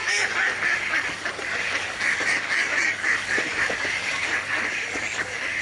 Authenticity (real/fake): fake